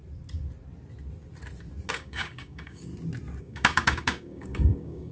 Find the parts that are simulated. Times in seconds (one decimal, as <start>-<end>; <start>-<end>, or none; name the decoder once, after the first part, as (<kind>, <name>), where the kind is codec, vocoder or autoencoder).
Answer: 1.9-2.9 (codec, DAC); 3.4-5.1